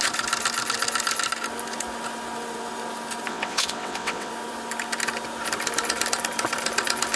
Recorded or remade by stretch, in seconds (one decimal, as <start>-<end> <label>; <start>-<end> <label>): 0.0-3.3 recorded; 3.3-4.3 remade; 4.3-7.2 recorded